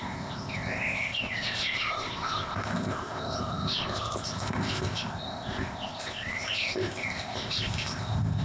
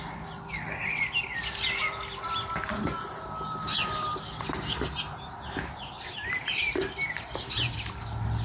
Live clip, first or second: second